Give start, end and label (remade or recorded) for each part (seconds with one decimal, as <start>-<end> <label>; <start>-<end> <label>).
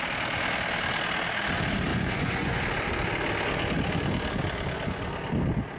0.0-1.9 recorded; 1.9-2.6 remade; 2.6-5.8 recorded